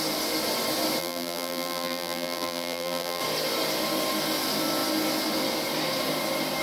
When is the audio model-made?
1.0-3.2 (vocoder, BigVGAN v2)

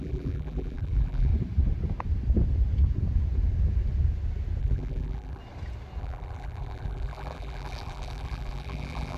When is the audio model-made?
0.0-1.3 (vocoder, BigVGAN v2); 4.6-5.4; 6.0-9.2

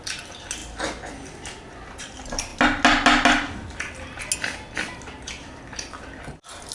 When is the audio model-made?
none